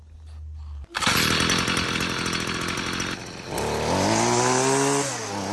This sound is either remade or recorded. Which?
recorded